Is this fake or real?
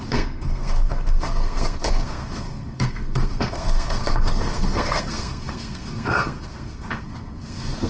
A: fake